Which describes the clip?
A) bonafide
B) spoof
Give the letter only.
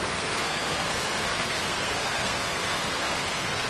B